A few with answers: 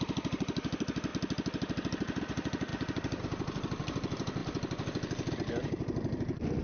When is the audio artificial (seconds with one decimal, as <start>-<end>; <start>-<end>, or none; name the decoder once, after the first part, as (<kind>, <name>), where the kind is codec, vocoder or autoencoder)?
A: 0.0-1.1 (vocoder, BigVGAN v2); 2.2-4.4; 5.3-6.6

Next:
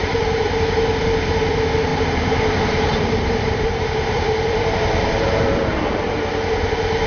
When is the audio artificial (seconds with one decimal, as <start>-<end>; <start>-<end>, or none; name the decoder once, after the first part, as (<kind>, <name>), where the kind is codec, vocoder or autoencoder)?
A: 0.0-1.0 (vocoder, BigVGAN v2); 1.9-5.9

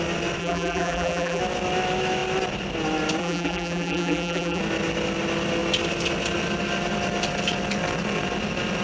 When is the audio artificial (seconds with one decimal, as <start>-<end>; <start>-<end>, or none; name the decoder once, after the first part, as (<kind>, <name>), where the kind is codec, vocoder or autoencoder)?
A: 0.4-1.4 (vocoder, BigVGAN v2); 3.2-4.6

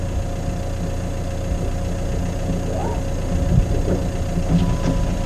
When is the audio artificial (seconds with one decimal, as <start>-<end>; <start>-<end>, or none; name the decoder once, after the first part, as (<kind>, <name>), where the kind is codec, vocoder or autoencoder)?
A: none

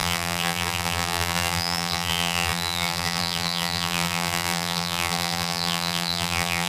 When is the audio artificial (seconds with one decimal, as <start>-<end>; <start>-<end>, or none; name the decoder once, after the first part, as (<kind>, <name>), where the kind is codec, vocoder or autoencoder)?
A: 0.0-6.7 (vocoder, BigVGAN v2)

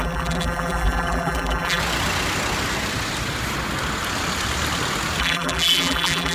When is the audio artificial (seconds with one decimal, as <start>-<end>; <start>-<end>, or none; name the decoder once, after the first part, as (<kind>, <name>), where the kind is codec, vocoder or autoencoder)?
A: 0.0-1.8 (vocoder, BigVGAN v2); 5.2-6.3

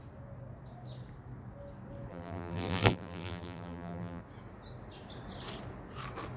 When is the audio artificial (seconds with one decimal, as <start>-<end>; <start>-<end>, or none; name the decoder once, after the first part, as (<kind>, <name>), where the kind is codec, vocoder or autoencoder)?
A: 2.1-4.2 (vocoder, BigVGAN v2)